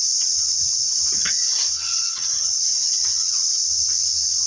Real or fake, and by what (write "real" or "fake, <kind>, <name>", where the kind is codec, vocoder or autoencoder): fake, vocoder, WaveNeXt